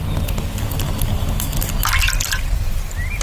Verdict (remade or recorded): recorded